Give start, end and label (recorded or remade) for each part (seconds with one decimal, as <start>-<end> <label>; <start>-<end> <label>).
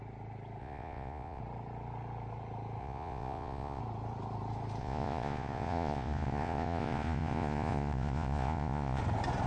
0.0-0.6 recorded; 0.6-1.4 remade; 1.4-2.8 recorded; 2.8-3.8 remade; 3.8-4.8 recorded; 4.8-9.0 remade; 9.0-9.5 recorded